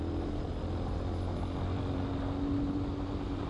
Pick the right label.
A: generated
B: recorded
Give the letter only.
B